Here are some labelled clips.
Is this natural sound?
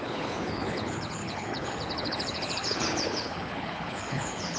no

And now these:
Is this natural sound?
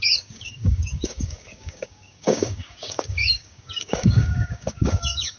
no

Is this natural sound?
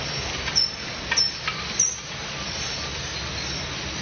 yes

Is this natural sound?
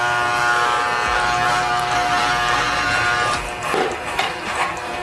no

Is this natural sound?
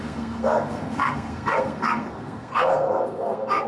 no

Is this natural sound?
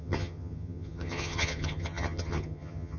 no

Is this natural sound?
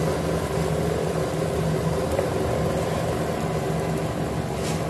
yes